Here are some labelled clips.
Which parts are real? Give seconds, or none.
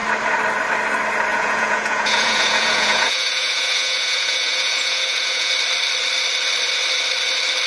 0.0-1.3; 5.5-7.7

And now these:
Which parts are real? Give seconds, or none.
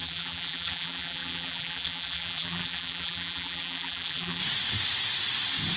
4.4-5.8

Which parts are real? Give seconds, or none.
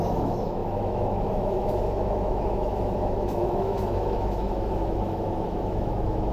none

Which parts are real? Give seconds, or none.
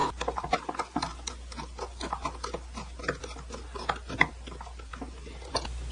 0.0-5.9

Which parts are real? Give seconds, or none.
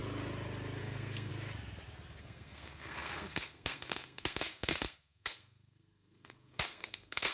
0.0-0.8; 1.3-2.2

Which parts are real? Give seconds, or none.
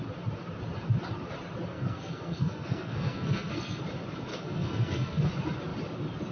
0.0-1.7; 3.8-4.3; 5.3-6.3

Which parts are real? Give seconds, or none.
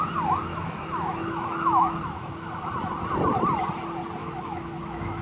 0.0-0.5; 2.7-4.2